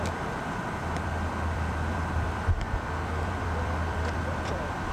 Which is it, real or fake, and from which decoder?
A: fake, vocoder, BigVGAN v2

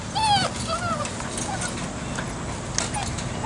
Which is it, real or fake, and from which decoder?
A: real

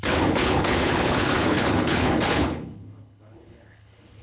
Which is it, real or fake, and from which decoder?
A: fake, codec, HILCodec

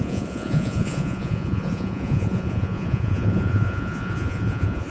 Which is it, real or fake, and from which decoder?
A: fake, vocoder, Vocos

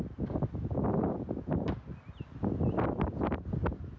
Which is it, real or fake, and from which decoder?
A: real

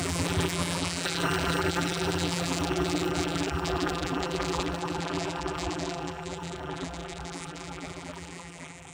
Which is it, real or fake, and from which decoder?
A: fake, vocoder, BigVGAN v2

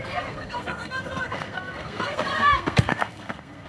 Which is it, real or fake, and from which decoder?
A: fake, codec, SNAC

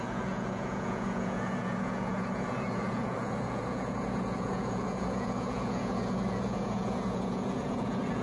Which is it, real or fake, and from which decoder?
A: fake, vocoder, Vocos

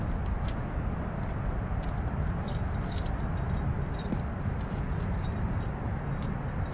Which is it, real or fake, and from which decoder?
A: real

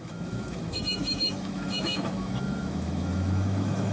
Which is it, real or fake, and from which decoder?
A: fake, autoencoder, DAC-VAE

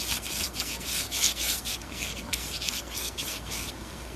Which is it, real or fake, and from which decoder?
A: fake, codec, SNAC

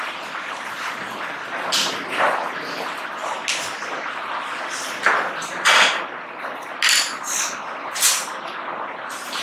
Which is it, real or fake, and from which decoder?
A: real